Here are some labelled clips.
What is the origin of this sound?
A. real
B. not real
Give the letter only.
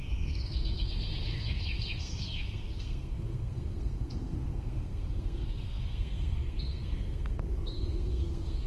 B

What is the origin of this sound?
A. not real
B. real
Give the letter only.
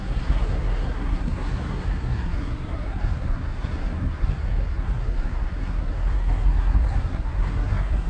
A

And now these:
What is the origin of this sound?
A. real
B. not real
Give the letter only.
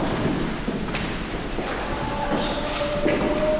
A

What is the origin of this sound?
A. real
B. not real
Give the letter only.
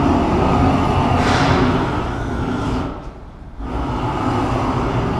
A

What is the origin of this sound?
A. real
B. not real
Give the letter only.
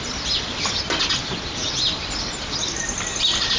A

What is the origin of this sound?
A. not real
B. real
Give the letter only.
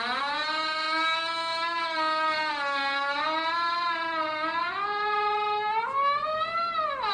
B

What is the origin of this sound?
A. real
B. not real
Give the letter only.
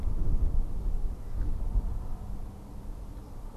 A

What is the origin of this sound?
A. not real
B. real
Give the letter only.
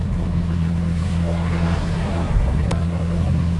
A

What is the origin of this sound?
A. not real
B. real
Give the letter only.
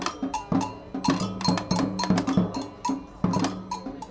B